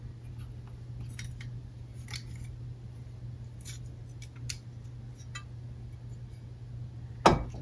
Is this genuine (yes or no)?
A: yes